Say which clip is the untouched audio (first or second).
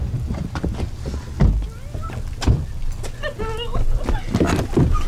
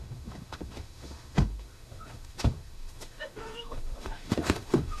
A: first